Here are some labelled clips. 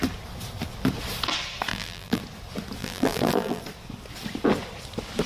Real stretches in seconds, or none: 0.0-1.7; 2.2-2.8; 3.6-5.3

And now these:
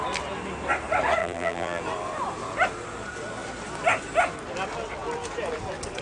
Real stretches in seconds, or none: 0.0-1.2; 1.8-6.0

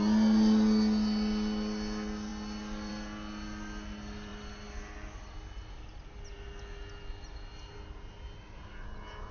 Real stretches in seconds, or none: 0.0-9.3

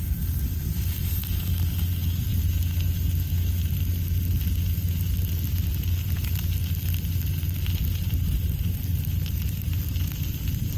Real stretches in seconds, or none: 0.0-10.8

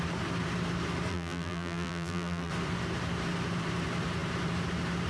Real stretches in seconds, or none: 0.0-1.1; 2.5-5.1

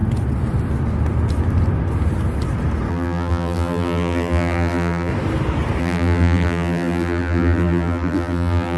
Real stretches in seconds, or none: 0.0-2.9; 5.1-5.8

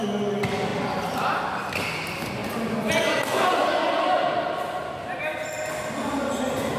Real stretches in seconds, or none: 0.0-6.8

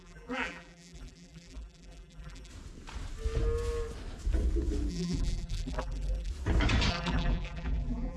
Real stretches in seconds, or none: 2.5-4.9; 6.3-6.9